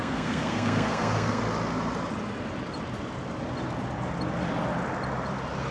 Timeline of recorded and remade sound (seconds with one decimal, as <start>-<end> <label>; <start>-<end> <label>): 0.0-1.4 remade; 1.4-5.7 recorded